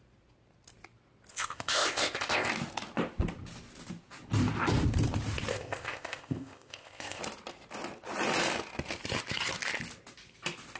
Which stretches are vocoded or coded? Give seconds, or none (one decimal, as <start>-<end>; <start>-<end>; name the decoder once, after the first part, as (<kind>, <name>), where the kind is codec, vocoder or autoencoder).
1.3-2.5 (codec, ZipCodec); 5.5-7.2